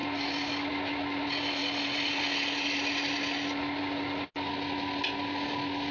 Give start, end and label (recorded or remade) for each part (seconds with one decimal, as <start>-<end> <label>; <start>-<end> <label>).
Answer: 0.0-5.9 recorded